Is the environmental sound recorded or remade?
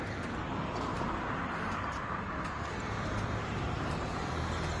remade